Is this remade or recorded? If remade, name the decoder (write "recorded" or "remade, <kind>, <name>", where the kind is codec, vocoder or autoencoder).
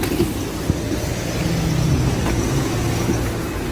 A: recorded